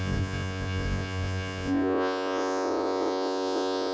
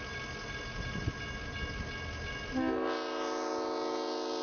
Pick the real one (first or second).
second